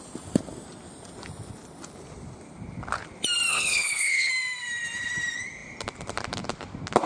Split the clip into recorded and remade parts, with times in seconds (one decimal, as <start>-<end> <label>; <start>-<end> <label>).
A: 0.0-3.5 recorded; 3.5-4.3 remade; 4.3-7.1 recorded